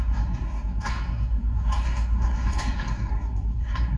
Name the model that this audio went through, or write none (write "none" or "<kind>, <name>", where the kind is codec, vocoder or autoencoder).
codec, SNAC